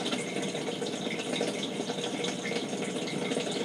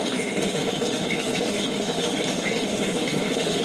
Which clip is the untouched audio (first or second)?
first